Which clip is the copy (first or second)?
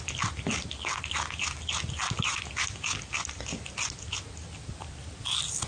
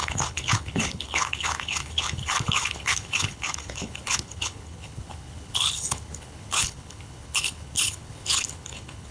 second